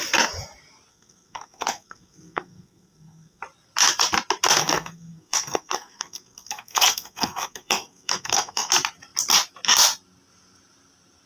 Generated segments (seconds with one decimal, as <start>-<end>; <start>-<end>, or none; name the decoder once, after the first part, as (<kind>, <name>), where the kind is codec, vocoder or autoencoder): 0.9-3.4 (codec, SNAC); 4.6-8.7